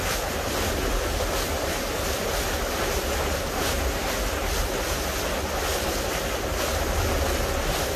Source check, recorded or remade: recorded